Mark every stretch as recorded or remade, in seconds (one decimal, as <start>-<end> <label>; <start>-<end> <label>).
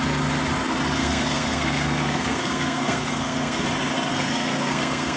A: 0.0-1.0 recorded; 1.0-3.6 remade; 3.6-4.1 recorded; 4.1-5.2 remade